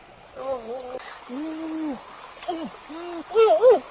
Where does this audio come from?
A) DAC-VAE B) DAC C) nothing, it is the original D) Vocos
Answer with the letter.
C